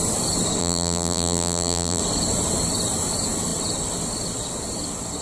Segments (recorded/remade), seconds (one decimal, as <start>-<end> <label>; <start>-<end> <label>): 0.0-0.6 recorded; 0.6-2.0 remade; 2.0-5.2 recorded